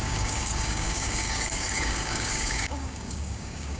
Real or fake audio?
fake